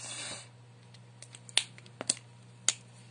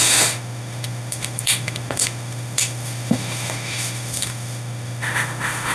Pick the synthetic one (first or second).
second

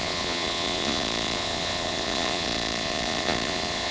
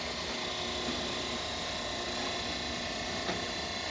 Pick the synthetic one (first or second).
first